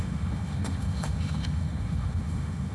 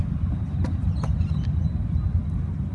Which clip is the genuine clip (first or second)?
second